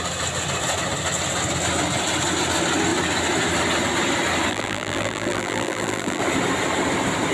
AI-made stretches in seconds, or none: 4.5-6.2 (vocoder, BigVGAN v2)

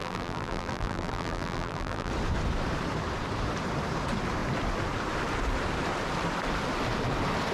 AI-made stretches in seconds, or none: 0.0-2.1 (vocoder, BigVGAN v2)